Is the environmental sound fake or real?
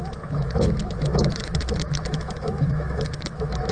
fake